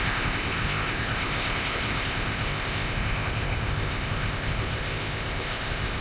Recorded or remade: remade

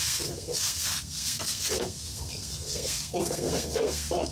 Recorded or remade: remade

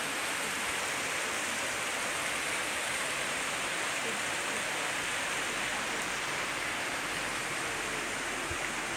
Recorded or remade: recorded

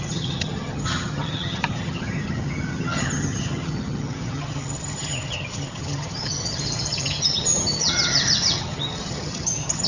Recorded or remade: remade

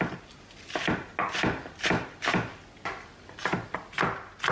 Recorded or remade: recorded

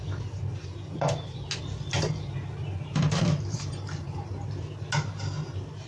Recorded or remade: recorded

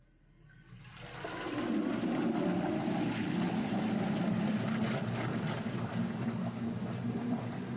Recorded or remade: recorded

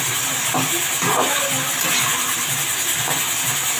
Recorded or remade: recorded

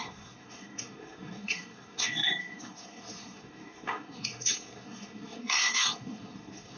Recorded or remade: remade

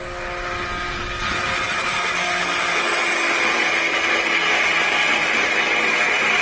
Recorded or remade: recorded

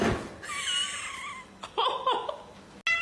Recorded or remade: recorded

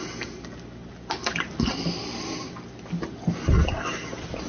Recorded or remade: recorded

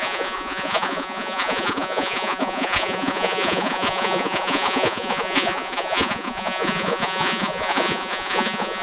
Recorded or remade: remade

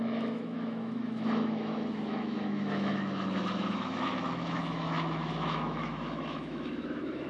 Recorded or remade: remade